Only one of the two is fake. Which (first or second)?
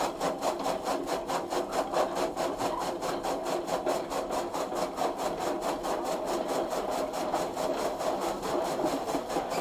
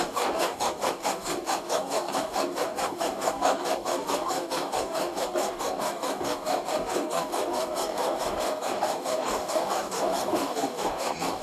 second